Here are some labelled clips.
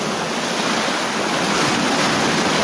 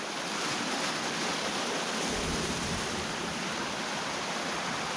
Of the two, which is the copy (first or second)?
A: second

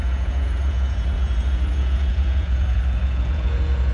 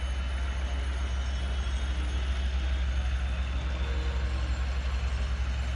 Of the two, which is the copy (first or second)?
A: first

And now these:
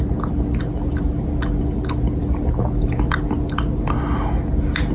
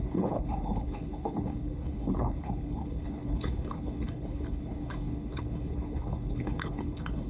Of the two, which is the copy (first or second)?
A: second